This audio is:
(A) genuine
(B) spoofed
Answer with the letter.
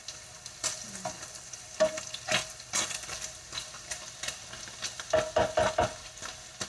A